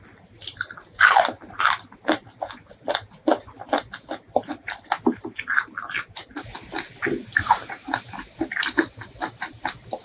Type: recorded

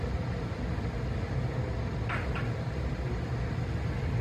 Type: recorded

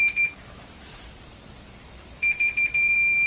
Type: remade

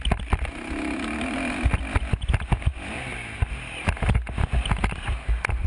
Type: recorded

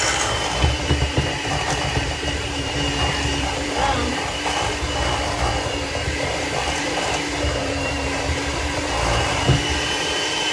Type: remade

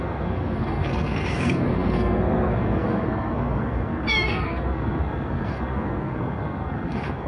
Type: remade